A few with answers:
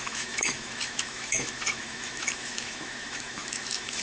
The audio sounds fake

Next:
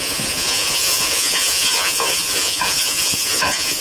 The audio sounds fake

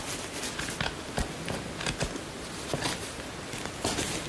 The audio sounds real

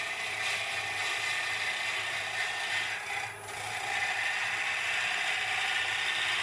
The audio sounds real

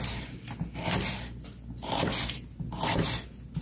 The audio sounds real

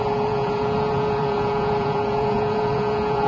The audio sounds fake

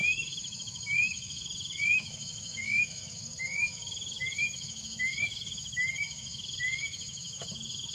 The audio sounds fake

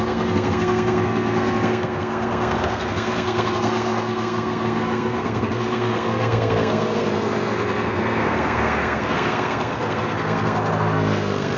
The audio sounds fake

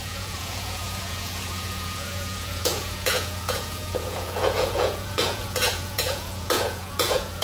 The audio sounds fake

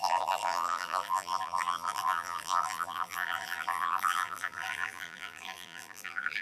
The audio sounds fake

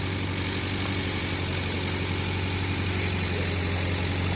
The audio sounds real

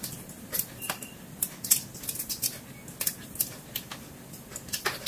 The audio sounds real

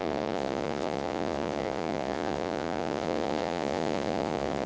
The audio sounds fake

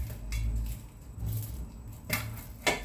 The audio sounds real